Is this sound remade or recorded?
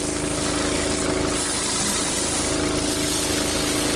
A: recorded